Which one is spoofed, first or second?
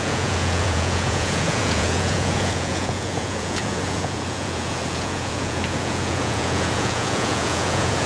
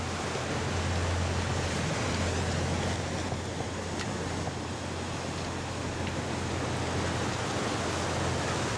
first